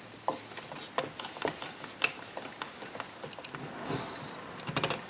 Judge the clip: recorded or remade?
recorded